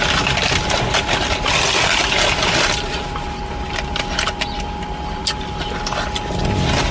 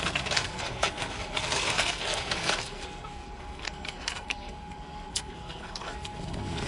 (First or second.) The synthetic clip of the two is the second